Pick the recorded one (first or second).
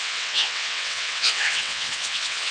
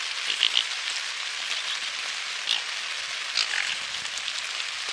second